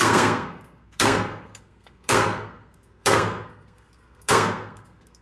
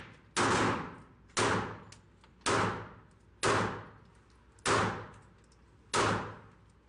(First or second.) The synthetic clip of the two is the first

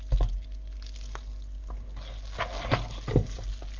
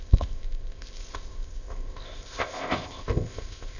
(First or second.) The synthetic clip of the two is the second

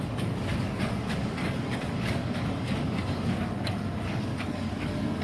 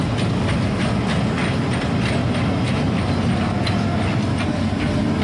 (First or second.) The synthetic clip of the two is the first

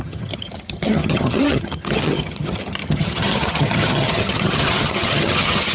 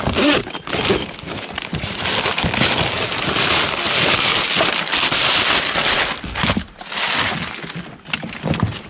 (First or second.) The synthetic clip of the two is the first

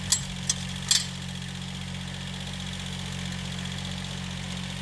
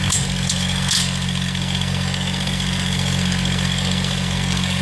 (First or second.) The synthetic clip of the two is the second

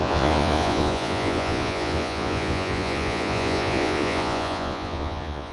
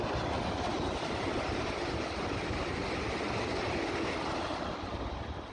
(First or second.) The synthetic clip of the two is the first